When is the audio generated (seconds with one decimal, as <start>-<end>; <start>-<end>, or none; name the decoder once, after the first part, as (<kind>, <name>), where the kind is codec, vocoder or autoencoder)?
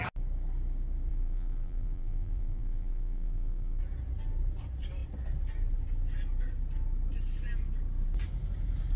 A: 1.1-3.8 (vocoder, BigVGAN v2)